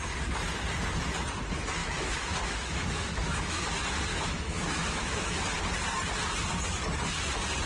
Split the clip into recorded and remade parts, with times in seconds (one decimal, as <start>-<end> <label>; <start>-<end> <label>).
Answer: 0.0-1.8 recorded; 1.8-3.6 remade; 3.6-4.1 recorded; 4.1-5.4 remade; 5.4-7.7 recorded